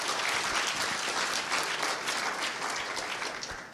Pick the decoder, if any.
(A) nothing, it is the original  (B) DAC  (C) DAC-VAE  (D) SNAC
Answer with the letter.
A